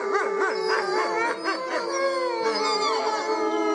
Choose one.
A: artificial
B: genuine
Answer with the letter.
B